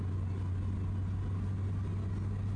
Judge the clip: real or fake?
real